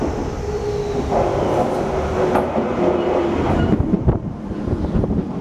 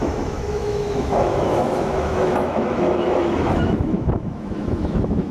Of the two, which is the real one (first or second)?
first